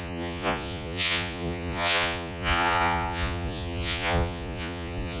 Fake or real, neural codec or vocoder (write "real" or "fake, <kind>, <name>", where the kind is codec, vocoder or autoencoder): fake, vocoder, Vocos